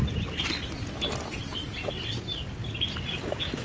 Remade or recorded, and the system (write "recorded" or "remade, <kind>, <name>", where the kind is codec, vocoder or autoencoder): recorded